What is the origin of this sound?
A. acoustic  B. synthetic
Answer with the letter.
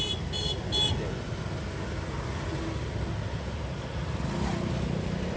A